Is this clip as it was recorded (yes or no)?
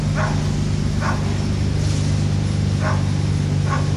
yes